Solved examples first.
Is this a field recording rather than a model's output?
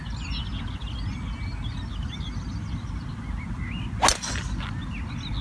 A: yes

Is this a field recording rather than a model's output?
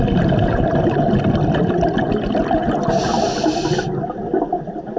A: yes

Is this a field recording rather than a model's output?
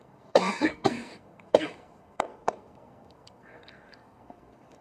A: no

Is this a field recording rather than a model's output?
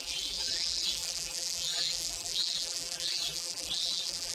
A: no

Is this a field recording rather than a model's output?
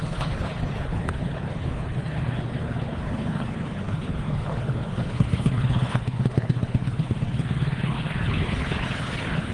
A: no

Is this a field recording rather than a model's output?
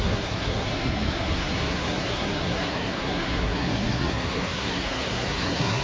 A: no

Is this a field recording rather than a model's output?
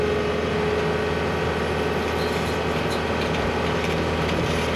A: yes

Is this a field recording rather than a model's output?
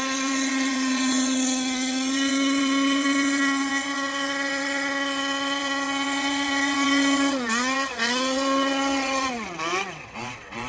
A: no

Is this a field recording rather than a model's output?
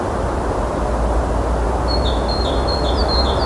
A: yes